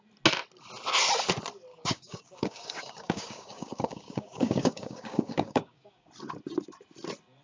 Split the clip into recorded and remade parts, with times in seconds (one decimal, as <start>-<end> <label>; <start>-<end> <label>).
0.0-1.7 recorded; 1.7-6.1 remade; 6.1-7.4 recorded